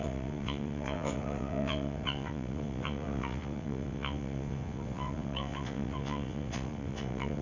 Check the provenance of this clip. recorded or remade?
remade